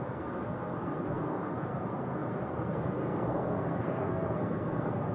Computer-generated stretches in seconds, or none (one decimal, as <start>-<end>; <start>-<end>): 0.0-5.1